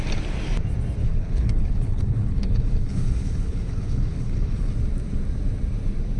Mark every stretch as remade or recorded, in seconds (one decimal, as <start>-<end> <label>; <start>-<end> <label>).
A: 0.0-1.0 recorded; 1.0-4.7 remade; 4.7-6.2 recorded